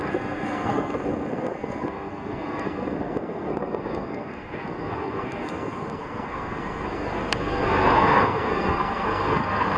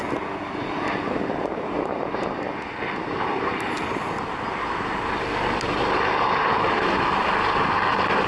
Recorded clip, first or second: second